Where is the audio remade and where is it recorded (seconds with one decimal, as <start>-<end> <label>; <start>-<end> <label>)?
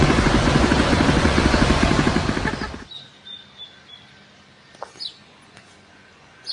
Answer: 0.0-2.1 remade; 2.1-5.2 recorded; 5.2-6.5 remade